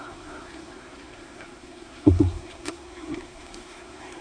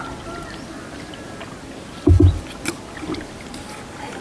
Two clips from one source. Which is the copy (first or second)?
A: first